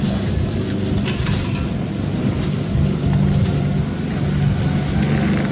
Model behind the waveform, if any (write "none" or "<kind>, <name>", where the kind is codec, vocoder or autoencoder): none